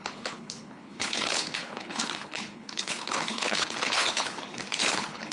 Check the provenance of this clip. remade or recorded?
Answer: remade